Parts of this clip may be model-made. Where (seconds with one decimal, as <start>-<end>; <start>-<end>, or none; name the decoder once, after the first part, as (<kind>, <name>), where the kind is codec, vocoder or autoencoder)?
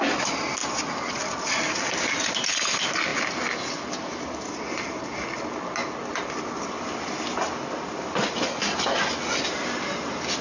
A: none